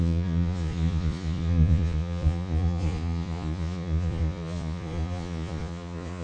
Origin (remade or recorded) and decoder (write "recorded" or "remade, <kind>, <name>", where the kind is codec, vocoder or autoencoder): remade, vocoder, Vocos